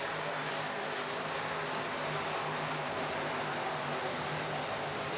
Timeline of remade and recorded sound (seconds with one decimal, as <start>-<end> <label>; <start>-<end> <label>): 0.0-5.2 recorded